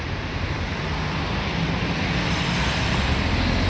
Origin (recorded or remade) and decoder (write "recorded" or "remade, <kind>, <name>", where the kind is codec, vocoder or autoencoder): recorded